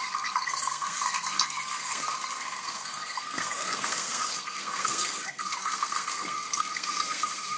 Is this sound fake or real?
fake